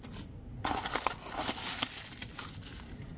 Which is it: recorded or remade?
recorded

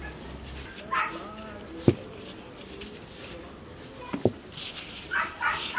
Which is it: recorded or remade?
recorded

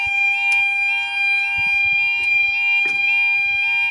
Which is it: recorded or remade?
recorded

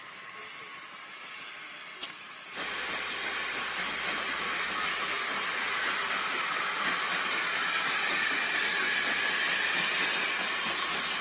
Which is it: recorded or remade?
recorded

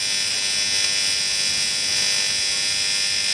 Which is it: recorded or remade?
recorded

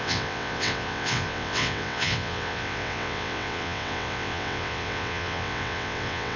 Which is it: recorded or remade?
remade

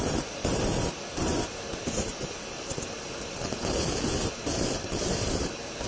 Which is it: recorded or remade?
recorded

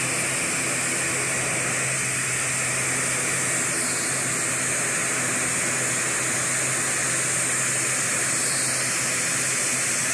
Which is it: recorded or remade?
recorded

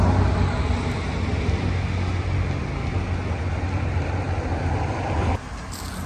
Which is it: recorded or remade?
recorded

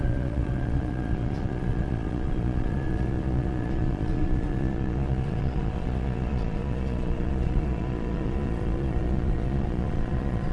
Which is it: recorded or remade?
remade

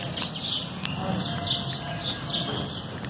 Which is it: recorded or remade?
recorded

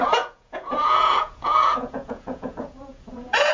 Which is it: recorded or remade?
remade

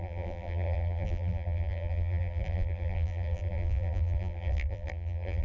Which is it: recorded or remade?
remade